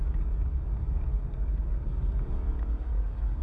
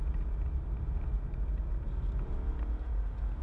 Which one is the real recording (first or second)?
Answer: second